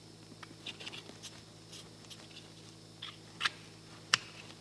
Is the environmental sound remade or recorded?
recorded